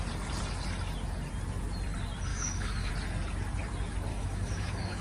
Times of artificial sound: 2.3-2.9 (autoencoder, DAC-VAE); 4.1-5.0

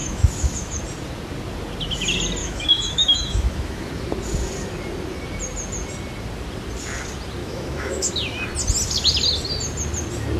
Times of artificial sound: 0.0-0.8 (autoencoder, DAC-VAE); 2.4-3.9; 7.4-8.1

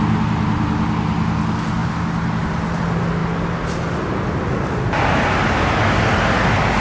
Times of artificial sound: none

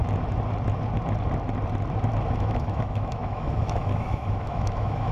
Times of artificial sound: 2.3-5.1 (autoencoder, DAC-VAE)

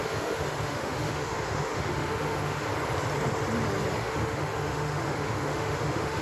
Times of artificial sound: 0.0-2.7 (autoencoder, DAC-VAE); 4.0-6.2

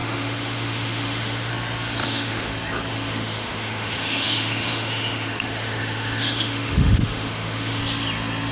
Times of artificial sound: 0.0-1.5 (autoencoder, DAC-VAE); 2.0-2.5; 2.9-7.8

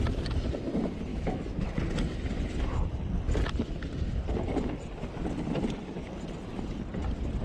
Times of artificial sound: 1.1-1.7 (autoencoder, DAC-VAE)

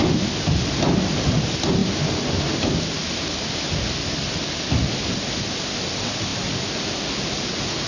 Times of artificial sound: none